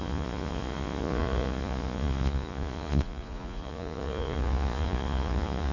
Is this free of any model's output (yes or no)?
no